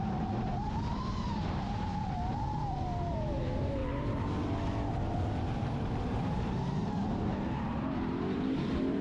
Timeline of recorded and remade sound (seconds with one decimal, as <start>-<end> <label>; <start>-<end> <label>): 0.0-3.8 remade; 3.8-5.5 recorded; 5.5-6.8 remade; 6.8-7.3 recorded; 7.3-9.0 remade